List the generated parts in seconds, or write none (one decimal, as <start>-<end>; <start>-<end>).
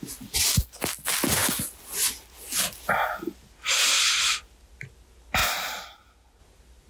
none